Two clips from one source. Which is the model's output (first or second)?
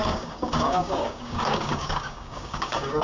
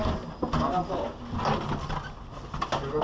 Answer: first